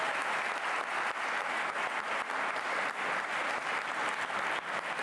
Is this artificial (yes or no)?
no